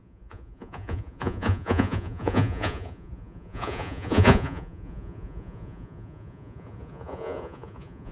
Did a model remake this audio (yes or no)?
yes